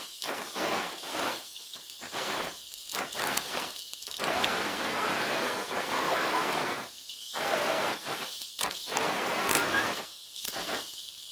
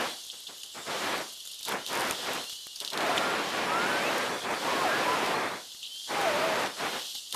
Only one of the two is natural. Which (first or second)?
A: second